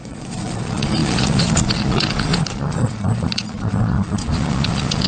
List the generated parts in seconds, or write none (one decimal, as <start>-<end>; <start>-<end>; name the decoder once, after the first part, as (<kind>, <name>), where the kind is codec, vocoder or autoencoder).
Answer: 0.0-5.1 (vocoder, Vocos)